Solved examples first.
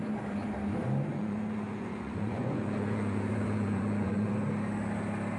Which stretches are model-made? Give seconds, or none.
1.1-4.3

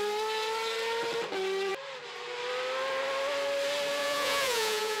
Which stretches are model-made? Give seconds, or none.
4.0-5.0